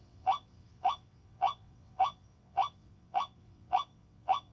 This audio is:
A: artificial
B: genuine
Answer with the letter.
A